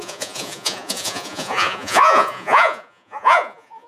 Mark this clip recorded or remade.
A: remade